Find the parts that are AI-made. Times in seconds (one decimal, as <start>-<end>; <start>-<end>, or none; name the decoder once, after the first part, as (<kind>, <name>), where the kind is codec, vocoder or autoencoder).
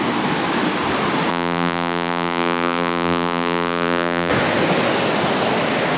1.3-4.3 (vocoder, BigVGAN v2)